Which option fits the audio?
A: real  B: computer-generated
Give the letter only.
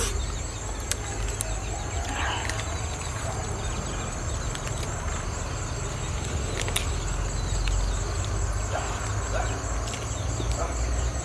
A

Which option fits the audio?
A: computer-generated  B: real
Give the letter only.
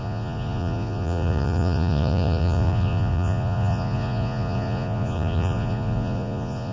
A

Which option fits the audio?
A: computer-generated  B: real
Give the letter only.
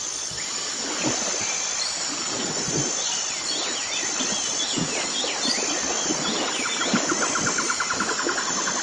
B